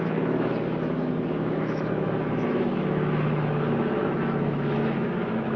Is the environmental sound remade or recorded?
remade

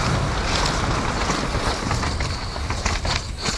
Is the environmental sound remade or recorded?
recorded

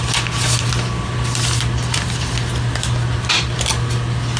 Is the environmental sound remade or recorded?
recorded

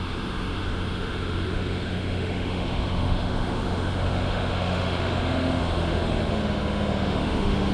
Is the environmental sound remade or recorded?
remade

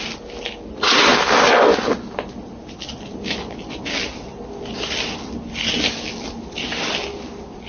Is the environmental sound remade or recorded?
recorded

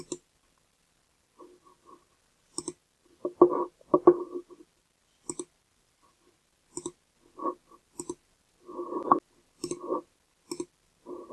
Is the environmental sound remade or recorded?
recorded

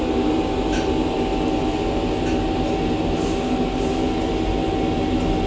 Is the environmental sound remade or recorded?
recorded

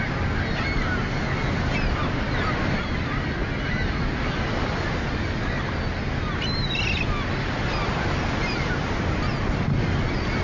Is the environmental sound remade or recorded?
recorded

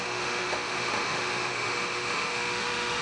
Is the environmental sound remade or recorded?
remade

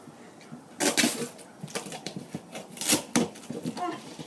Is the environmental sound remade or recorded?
recorded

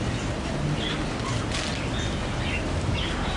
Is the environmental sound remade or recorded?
recorded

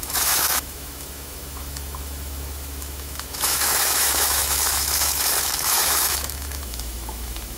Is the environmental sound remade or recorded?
remade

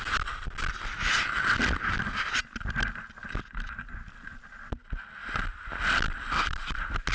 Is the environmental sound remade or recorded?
recorded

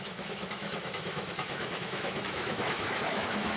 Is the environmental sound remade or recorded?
remade